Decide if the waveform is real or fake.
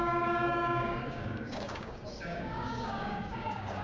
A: fake